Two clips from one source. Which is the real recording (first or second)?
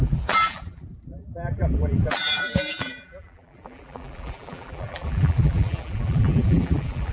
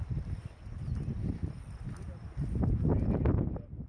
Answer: second